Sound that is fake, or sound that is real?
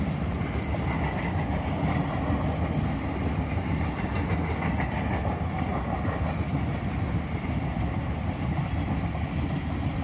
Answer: real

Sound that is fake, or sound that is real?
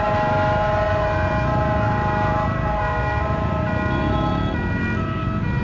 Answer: real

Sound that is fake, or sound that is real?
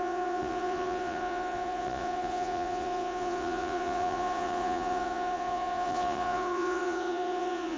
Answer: fake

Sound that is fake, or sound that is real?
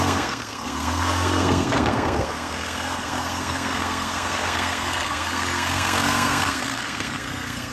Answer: fake